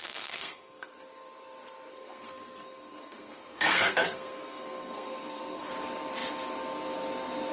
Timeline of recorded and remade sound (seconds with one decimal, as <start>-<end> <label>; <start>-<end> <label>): 0.0-0.9 remade; 0.9-1.9 recorded; 1.9-5.7 remade; 5.7-7.5 recorded